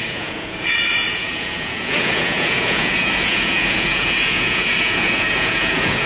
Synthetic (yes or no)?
yes